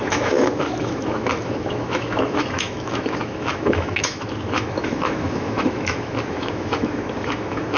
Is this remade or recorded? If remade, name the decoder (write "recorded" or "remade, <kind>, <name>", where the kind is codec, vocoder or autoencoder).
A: remade, autoencoder, DAC-VAE